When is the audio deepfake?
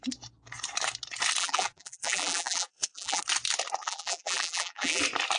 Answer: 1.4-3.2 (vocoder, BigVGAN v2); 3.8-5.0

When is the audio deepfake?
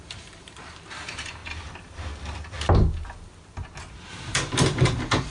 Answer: 0.0-1.4 (vocoder, BigVGAN v2); 4.1-5.3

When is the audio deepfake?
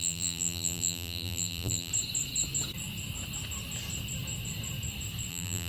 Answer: 0.0-1.9 (vocoder, BigVGAN v2); 5.3-5.7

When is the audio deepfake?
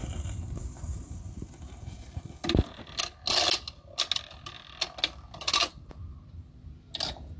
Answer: 0.0-2.2 (vocoder, BigVGAN v2)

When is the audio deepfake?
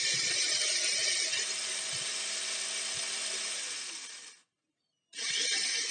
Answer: 1.0-4.5 (vocoder, BigVGAN v2)